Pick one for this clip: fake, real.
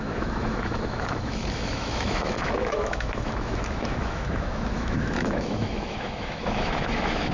fake